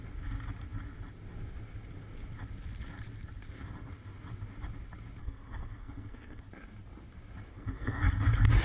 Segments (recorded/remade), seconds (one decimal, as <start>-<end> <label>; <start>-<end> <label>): 0.0-5.2 recorded; 5.2-6.4 remade; 6.4-7.5 recorded; 7.5-8.1 remade; 8.1-8.6 recorded